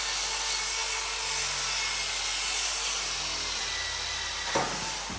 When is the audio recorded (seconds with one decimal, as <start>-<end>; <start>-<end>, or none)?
0.0-5.2